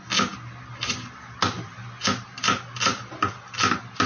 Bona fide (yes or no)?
yes